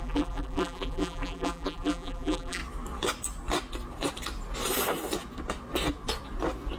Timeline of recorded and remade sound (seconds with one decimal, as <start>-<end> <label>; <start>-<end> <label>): 0.0-2.6 remade; 2.6-6.8 recorded